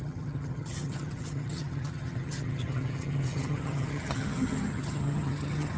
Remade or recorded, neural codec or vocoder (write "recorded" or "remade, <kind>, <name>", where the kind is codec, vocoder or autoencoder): remade, vocoder, HiFi-GAN